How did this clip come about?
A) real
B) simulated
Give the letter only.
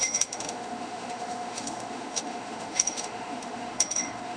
B